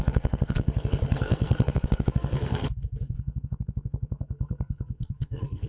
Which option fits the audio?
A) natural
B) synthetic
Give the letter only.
B